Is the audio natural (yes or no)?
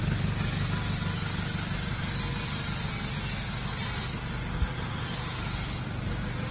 yes